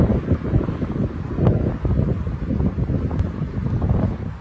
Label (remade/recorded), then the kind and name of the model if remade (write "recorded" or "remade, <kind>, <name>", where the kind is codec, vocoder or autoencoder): recorded